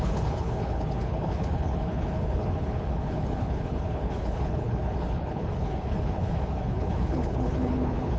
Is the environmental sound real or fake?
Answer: fake